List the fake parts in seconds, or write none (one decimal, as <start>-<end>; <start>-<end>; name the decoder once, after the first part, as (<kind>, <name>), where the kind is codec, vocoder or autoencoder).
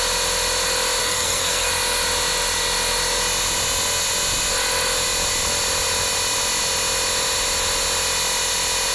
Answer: 1.0-1.7 (codec, SNAC)